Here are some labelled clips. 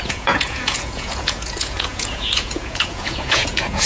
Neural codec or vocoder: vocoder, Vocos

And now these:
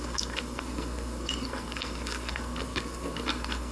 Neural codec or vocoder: codec, SNAC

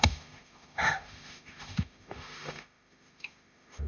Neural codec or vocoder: autoencoder, DAC-VAE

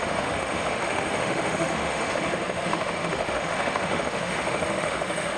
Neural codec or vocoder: autoencoder, DAC-VAE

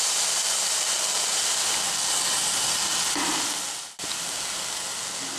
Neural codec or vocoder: none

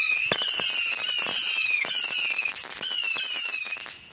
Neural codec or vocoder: none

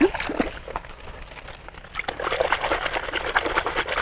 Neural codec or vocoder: none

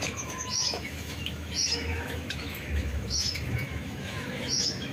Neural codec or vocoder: autoencoder, DAC-VAE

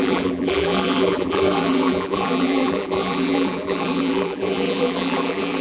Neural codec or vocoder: vocoder, BigVGAN v2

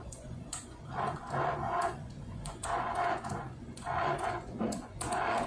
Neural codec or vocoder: vocoder, Vocos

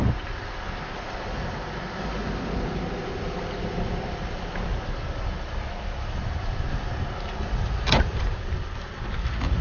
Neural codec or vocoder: none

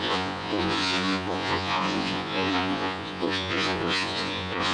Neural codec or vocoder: vocoder, Vocos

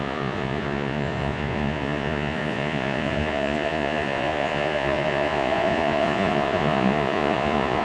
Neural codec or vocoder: vocoder, Vocos